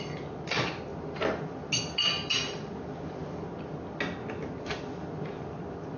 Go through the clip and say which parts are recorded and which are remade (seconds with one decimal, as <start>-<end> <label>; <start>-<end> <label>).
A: 0.0-6.0 recorded